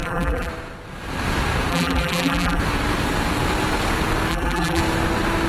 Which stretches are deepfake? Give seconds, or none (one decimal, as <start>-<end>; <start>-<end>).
0.0-0.5; 1.7-2.6; 4.3-4.8